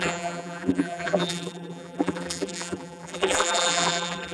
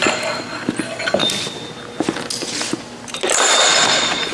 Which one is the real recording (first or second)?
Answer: second